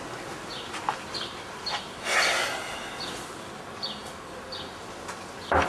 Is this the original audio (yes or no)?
yes